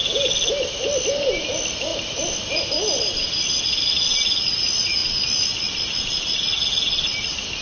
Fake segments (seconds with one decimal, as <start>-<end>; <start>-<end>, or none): 1.9-3.0